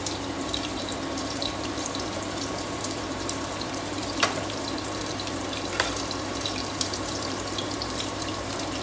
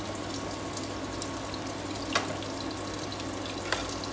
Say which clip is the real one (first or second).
second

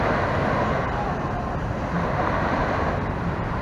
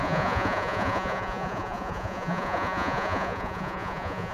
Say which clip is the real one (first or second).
first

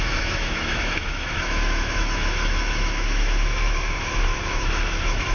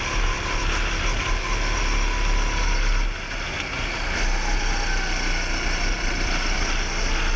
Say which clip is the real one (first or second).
second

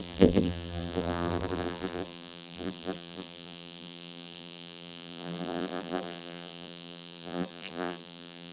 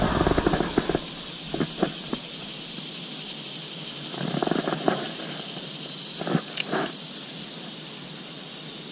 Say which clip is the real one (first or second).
second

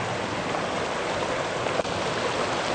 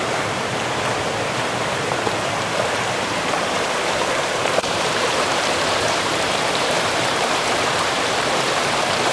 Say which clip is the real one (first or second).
first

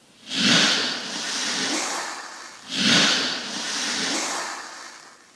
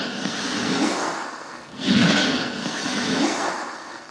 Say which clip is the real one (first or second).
first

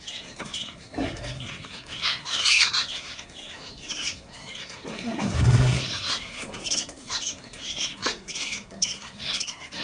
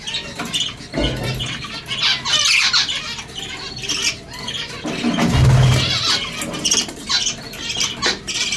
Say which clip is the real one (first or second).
second